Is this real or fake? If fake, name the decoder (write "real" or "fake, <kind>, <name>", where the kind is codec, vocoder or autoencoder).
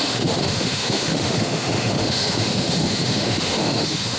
fake, autoencoder, DAC-VAE